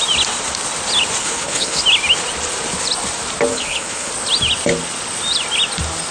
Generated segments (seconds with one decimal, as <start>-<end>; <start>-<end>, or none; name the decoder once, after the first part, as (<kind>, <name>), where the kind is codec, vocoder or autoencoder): 1.2-1.8 (codec, HILCodec); 3.5-4.1